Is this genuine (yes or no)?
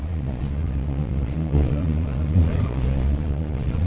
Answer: no